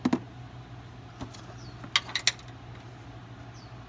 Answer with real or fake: real